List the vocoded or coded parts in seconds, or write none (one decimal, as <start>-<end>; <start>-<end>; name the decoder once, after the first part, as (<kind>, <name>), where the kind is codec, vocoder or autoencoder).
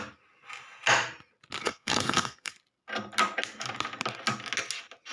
1.6-2.5 (codec, SNAC)